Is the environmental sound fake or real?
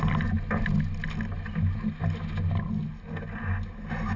real